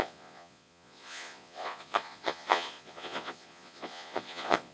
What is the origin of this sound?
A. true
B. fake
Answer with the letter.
B